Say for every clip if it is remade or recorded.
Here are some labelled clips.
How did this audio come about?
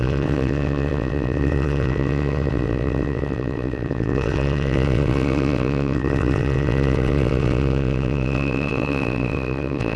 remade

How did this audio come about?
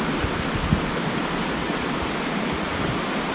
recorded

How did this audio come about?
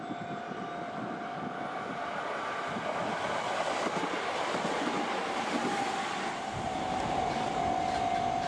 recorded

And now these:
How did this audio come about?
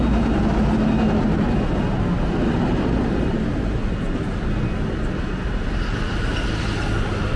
recorded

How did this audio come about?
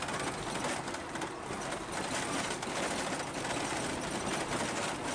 recorded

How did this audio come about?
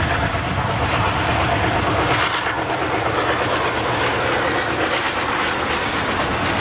recorded